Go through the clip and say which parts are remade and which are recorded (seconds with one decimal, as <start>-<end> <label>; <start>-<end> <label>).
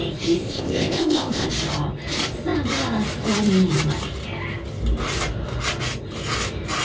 0.0-0.4 recorded; 0.4-1.5 remade; 1.5-6.8 recorded